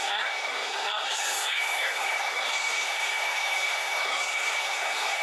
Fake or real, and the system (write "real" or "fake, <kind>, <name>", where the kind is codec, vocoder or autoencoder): fake, codec, SNAC